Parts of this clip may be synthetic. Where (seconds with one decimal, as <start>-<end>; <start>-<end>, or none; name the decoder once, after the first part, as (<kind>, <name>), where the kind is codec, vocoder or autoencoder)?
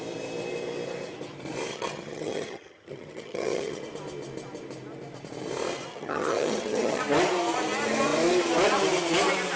1.7-3.8 (vocoder, HiFi-GAN); 5.9-7.0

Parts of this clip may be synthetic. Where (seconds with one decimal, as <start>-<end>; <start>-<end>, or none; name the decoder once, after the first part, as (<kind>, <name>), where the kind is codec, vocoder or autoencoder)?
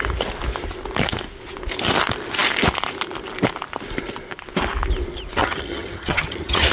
5.4-6.7 (vocoder, HiFi-GAN)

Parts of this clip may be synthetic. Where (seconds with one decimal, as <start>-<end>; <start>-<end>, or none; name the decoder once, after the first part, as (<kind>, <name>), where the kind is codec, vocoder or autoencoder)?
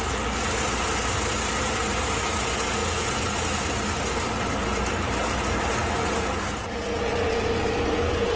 none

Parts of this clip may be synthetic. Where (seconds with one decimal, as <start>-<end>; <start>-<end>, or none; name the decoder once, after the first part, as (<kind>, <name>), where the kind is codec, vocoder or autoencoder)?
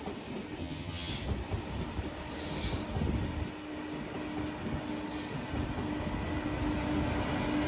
0.6-1.1 (vocoder, HiFi-GAN)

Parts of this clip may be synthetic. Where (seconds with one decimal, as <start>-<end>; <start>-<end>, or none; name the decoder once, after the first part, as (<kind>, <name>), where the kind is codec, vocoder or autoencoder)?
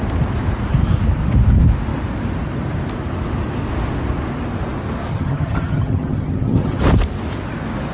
5.1-6.8 (vocoder, HiFi-GAN)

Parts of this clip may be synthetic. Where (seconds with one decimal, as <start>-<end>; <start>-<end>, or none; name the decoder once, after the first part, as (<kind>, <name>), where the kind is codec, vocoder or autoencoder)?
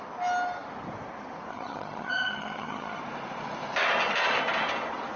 1.5-3.0 (vocoder, HiFi-GAN)